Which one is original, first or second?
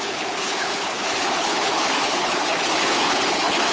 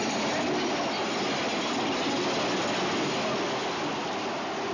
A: second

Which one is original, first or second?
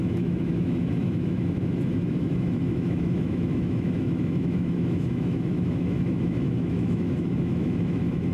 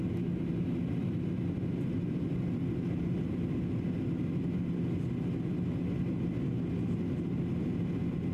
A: second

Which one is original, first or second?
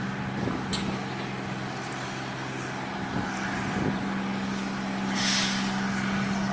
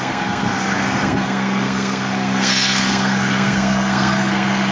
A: first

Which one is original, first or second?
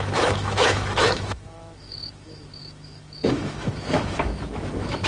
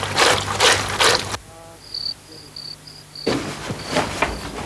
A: second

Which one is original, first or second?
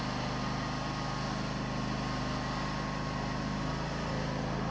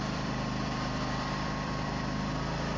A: first